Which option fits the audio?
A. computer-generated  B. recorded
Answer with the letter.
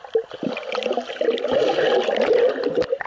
B